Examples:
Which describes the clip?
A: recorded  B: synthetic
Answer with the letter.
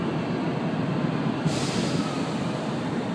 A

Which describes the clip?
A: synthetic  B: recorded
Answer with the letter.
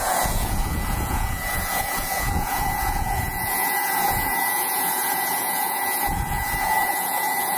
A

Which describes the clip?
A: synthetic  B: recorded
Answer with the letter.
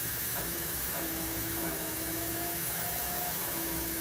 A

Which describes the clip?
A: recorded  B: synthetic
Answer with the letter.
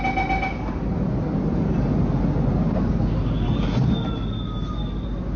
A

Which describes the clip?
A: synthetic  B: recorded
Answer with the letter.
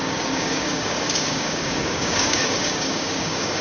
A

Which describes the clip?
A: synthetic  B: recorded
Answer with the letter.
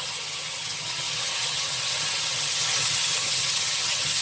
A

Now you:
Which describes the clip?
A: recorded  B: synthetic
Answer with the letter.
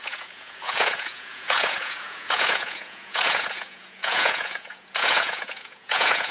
B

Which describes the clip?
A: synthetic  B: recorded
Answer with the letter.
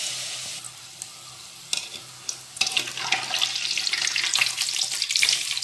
B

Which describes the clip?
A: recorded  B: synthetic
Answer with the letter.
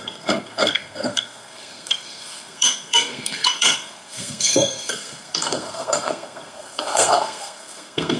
B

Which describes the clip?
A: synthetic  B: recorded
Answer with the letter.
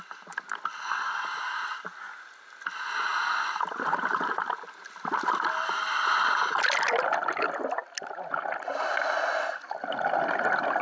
B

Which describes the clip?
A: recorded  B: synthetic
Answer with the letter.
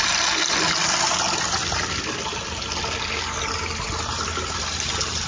A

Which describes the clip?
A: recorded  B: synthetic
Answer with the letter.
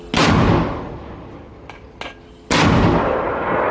A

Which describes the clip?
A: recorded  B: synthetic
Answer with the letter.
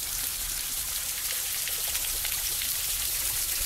B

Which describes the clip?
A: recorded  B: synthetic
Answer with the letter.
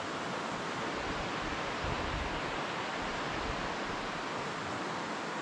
A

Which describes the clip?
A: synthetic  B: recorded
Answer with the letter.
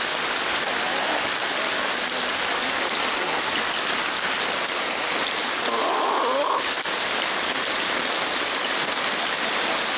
B